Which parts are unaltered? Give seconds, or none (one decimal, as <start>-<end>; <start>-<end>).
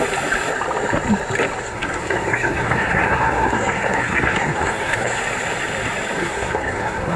0.0-1.6; 5.2-6.2